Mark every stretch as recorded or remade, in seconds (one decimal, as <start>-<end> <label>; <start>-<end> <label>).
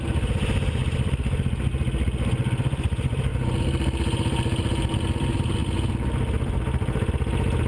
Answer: 0.0-7.7 recorded